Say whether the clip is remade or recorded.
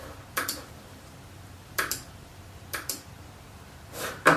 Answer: remade